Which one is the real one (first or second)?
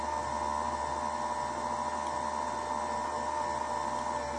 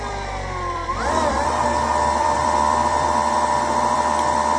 first